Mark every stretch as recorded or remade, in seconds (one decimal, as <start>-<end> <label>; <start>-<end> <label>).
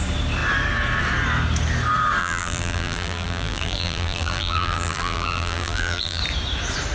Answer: 0.0-2.2 recorded; 2.2-6.2 remade; 6.2-6.9 recorded